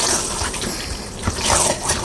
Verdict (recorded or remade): recorded